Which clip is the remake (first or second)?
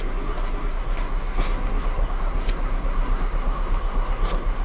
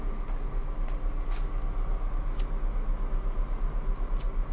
first